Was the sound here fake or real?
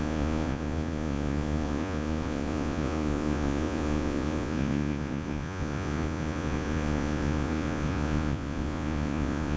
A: fake